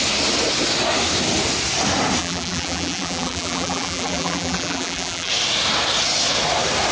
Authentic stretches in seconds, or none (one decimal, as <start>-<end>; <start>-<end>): 0.0-2.2; 5.3-6.9